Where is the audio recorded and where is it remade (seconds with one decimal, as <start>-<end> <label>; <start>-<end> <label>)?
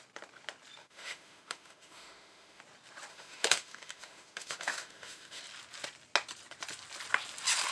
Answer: 0.0-0.8 recorded; 0.8-2.6 remade; 2.6-3.1 recorded; 3.1-5.4 remade; 5.4-7.7 recorded